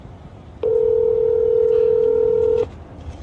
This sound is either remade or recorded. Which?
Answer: recorded